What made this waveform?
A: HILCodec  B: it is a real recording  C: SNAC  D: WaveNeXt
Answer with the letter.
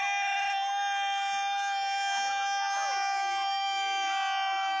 B